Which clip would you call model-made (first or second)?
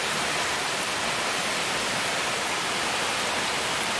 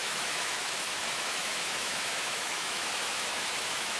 second